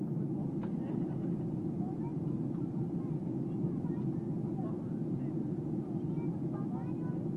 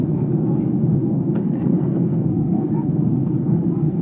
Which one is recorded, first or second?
first